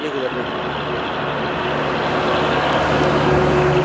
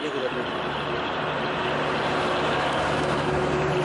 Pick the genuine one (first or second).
first